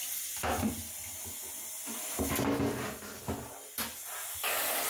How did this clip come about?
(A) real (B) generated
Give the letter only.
A